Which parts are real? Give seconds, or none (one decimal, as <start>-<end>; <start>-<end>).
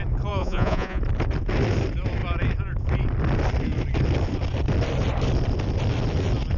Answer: 0.0-0.4; 1.0-6.6